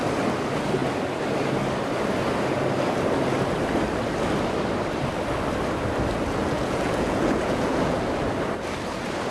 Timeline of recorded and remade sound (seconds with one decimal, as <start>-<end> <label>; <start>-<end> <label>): 0.0-6.4 recorded; 6.4-8.1 remade; 8.1-9.3 recorded